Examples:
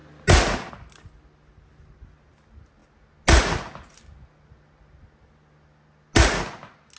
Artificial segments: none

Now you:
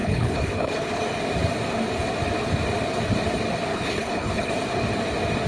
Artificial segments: 0.0-1.0 (codec, HILCodec); 3.7-4.5

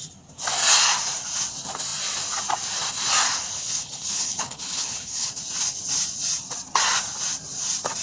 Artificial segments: 3.5-5.3 (codec, HILCodec)

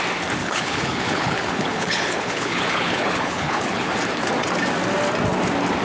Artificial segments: 0.4-3.9 (codec, HILCodec)

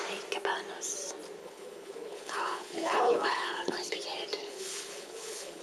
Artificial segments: 1.4-3.9 (codec, HILCodec); 4.4-5.6

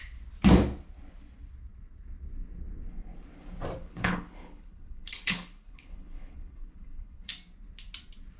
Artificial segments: 3.8-7.3 (codec, HILCodec)